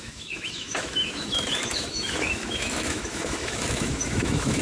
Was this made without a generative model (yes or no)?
no